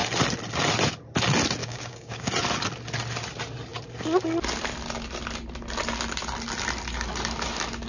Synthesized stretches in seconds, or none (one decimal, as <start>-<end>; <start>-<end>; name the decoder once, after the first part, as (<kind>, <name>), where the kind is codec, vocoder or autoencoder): 1.6-2.3 (codec, DAC)